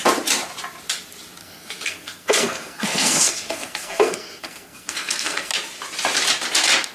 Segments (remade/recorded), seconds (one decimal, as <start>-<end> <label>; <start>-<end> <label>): 0.0-1.4 recorded; 1.4-5.5 remade; 5.5-6.9 recorded